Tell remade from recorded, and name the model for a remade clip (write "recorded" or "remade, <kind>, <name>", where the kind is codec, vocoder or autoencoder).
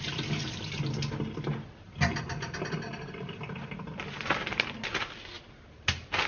recorded